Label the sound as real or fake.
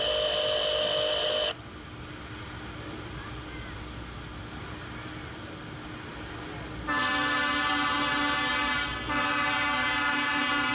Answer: real